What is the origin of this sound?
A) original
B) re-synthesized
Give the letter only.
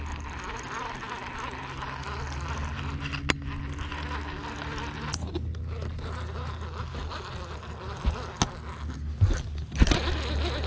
A